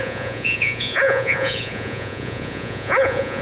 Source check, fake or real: fake